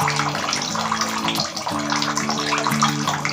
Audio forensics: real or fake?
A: real